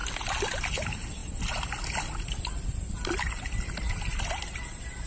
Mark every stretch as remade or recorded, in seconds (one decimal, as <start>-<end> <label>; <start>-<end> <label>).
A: 0.0-5.1 recorded